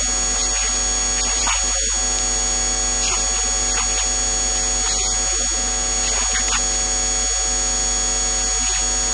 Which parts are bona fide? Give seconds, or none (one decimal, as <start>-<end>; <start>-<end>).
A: 0.0-9.1

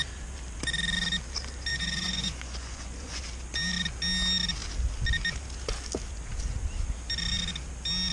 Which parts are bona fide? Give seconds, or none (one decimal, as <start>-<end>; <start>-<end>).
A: 0.0-1.7; 3.2-8.1

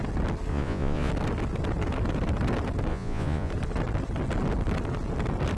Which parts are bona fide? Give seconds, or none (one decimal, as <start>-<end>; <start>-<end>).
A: 0.0-0.5; 1.1-2.9; 3.5-5.6